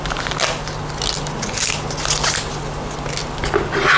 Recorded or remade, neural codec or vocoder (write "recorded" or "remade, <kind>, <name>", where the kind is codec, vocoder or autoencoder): recorded